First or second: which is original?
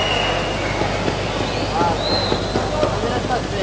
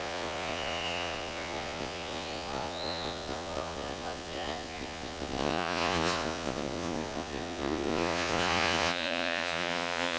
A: first